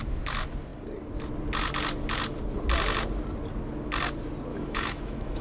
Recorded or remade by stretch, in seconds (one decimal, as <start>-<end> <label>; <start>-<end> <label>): 0.0-4.5 recorded; 4.5-5.4 remade